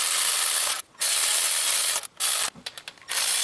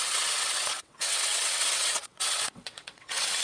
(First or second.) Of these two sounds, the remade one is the second